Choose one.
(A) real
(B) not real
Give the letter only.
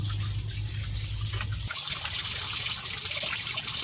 A